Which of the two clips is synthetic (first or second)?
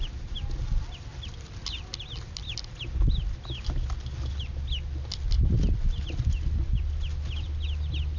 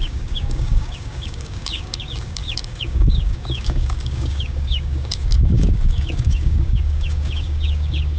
second